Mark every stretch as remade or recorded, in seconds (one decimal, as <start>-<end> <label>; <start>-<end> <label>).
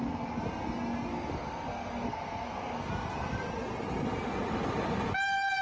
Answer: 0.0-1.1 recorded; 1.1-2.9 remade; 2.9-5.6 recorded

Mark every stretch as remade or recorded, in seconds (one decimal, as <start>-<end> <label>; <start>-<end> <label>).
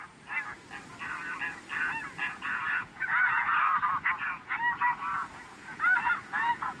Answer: 0.0-2.2 recorded; 2.2-4.6 remade; 4.6-5.2 recorded; 5.2-6.8 remade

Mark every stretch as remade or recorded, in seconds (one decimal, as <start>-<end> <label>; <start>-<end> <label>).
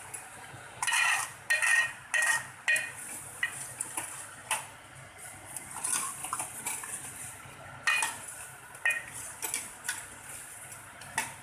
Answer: 0.0-11.4 recorded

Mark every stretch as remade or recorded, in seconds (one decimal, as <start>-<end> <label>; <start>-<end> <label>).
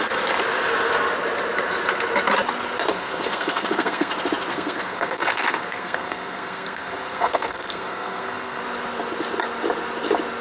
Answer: 0.0-2.9 recorded; 2.9-4.1 remade; 4.1-4.5 recorded; 4.5-8.6 remade; 8.6-10.4 recorded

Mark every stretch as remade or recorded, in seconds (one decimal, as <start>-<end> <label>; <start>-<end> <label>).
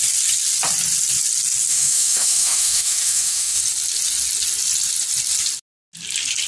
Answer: 0.0-1.7 recorded; 1.7-3.6 remade; 3.6-6.5 recorded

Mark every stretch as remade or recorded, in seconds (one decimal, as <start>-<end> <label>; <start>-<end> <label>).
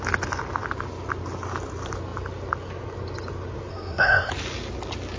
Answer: 0.0-3.7 recorded; 3.7-4.3 remade; 4.3-5.2 recorded